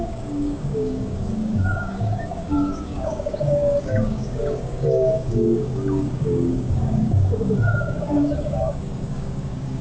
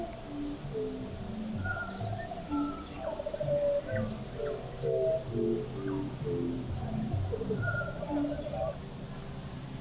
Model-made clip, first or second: first